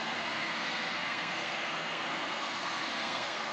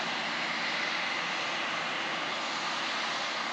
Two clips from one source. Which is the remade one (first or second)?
first